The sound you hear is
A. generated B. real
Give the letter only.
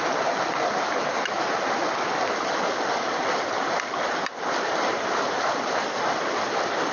B